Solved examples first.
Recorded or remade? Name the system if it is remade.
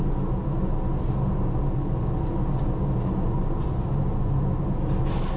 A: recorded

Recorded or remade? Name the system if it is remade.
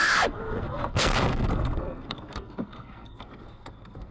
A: remade, codec, SNAC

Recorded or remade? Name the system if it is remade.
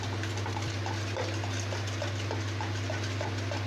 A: recorded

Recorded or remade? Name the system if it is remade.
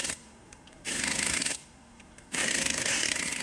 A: remade, codec, SNAC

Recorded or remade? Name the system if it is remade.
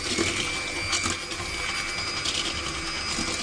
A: recorded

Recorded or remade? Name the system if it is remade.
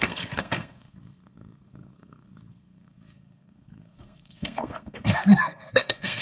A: remade, codec, SNAC